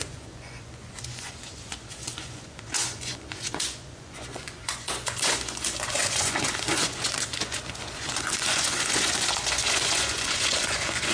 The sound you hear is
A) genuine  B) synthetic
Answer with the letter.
B